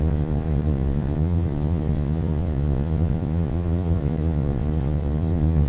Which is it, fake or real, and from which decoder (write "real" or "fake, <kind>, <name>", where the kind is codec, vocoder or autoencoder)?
fake, vocoder, Vocos